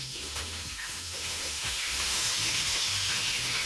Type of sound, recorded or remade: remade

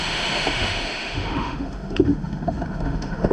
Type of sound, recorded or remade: remade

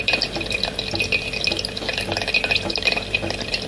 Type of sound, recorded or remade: recorded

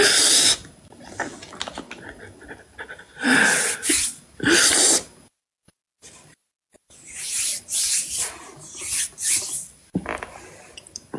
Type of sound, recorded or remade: recorded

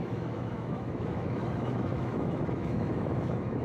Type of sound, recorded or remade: remade